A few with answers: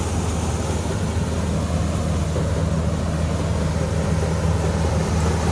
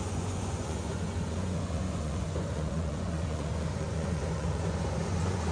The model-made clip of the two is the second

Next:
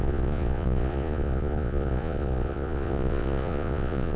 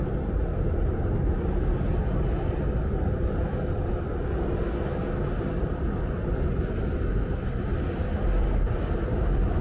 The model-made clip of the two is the first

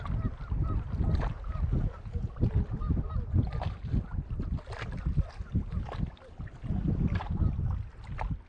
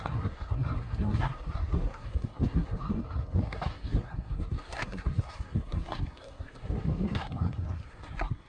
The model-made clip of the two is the second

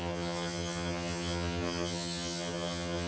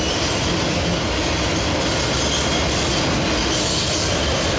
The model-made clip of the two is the first